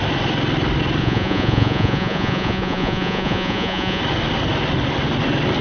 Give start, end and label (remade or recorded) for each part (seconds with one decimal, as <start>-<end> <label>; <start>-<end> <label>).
0.0-1.0 recorded; 1.0-4.0 remade; 4.0-5.6 recorded